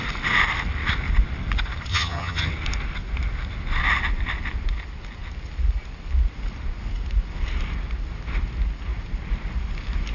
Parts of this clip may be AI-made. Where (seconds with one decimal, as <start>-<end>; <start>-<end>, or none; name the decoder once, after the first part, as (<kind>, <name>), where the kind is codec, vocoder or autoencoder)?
1.9-2.5 (vocoder, HiFi-GAN)